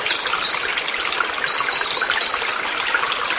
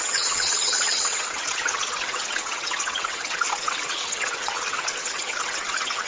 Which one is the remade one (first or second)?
second